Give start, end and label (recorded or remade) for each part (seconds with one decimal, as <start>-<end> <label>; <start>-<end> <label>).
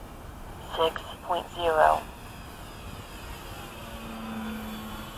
0.0-5.2 recorded